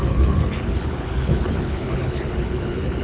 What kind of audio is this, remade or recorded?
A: remade